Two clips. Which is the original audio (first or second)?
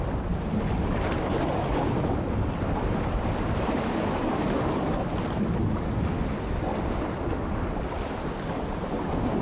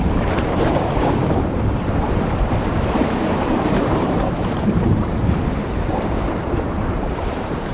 first